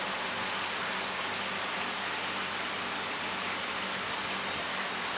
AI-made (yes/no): no